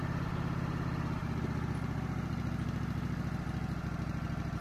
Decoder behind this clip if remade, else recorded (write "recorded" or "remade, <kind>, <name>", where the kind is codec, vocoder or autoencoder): recorded